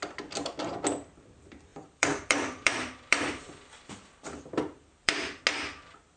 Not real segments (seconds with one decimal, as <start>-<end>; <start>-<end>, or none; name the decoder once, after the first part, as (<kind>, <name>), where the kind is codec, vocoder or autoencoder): 1.7-5.4 (vocoder, BigVGAN v2)